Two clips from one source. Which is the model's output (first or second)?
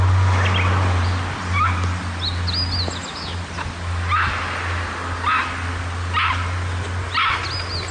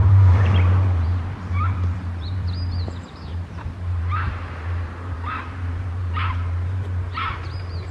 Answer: second